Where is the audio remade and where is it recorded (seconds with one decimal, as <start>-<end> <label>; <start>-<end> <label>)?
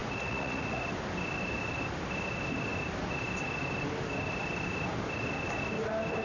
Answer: 0.0-0.8 remade; 0.8-6.2 recorded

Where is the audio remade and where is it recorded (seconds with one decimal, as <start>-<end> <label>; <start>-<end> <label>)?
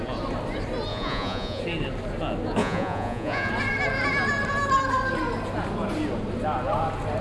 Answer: 0.0-0.9 recorded; 0.9-1.6 remade; 1.6-2.6 recorded; 2.6-3.5 remade; 3.5-7.2 recorded